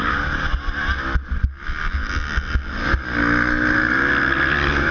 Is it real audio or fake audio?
real